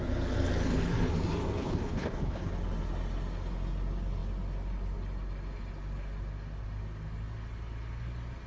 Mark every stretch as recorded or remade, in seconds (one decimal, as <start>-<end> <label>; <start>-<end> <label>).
0.0-1.6 recorded; 1.6-2.5 remade; 2.5-8.5 recorded